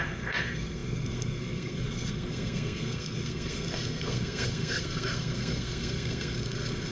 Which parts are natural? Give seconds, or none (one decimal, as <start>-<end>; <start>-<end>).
none